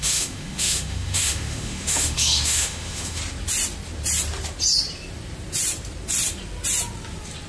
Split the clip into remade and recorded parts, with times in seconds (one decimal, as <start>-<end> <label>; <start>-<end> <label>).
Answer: 0.0-3.2 remade; 3.2-7.5 recorded